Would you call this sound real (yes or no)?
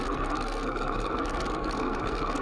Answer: no